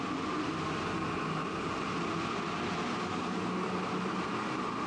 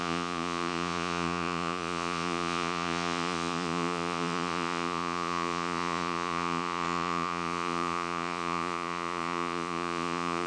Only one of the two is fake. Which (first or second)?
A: second